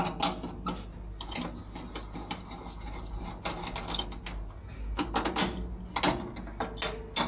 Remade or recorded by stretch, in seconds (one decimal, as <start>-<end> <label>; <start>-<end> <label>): 0.0-7.3 recorded